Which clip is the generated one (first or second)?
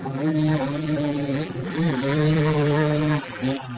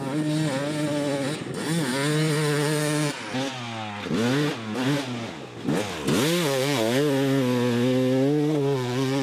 first